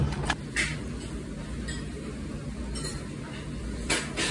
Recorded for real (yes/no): yes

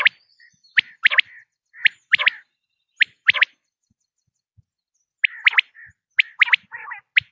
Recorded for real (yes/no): yes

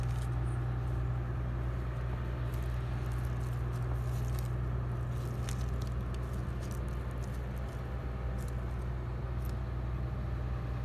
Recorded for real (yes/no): yes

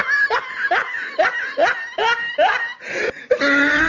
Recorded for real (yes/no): yes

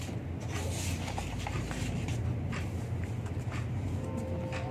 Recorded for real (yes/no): yes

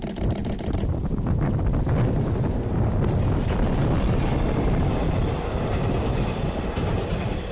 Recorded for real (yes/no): yes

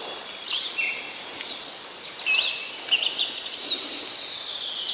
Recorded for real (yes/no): yes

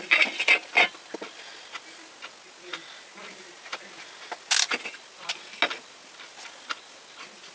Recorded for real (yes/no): yes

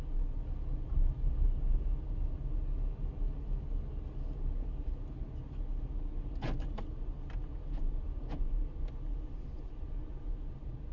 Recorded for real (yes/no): yes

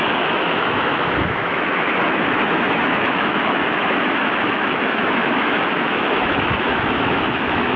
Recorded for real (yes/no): no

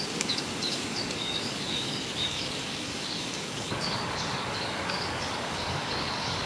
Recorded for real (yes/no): no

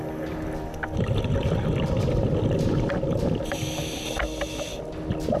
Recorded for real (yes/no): yes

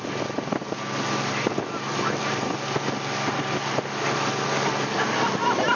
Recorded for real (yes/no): yes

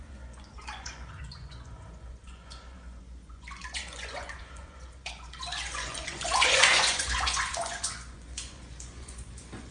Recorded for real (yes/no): no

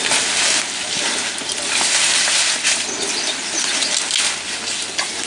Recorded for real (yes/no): yes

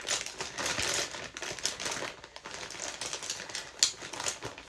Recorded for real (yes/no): yes